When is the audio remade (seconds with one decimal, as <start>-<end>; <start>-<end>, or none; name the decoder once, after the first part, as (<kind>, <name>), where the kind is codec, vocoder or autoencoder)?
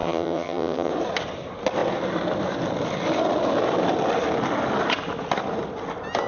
0.0-0.9 (vocoder, HiFi-GAN)